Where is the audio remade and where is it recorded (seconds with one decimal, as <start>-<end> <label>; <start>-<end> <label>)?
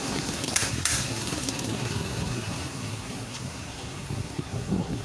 0.0-5.0 remade